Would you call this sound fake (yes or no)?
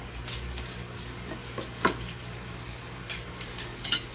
yes